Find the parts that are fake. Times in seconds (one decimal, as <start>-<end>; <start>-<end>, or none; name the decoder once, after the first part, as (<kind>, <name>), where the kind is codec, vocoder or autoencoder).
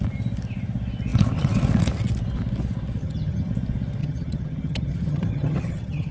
3.0-3.5 (vocoder, HiFi-GAN); 4.0-6.1